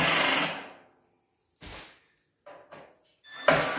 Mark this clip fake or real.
real